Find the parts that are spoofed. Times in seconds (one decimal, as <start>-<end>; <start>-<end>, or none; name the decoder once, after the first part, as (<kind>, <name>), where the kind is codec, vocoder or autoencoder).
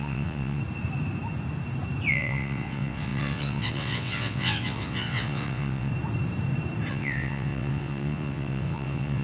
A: 0.0-0.6 (vocoder, WaveNeXt); 2.1-5.9; 6.9-9.2